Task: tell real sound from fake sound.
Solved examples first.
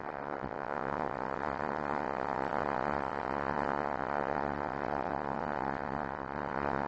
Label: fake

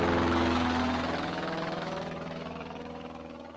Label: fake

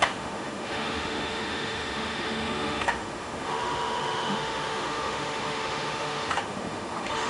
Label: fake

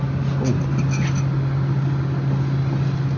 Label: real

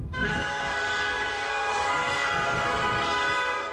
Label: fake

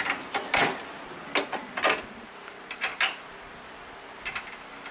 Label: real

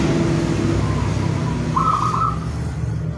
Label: real